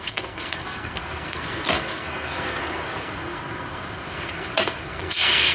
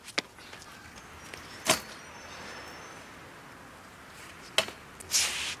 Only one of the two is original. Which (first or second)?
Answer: second